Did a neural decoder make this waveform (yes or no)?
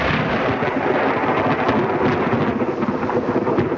yes